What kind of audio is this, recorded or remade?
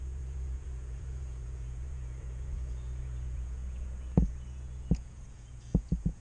remade